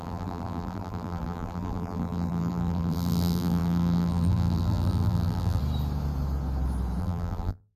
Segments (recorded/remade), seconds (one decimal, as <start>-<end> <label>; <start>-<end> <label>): 0.0-5.6 remade; 5.6-7.0 recorded; 7.0-7.8 remade